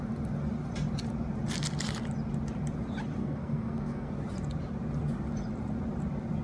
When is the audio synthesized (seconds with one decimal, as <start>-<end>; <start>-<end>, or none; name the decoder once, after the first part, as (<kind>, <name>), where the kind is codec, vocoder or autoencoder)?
3.2-4.1 (codec, SNAC)